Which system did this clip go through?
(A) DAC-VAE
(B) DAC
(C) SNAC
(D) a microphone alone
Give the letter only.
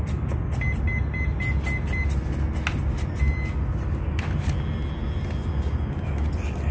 D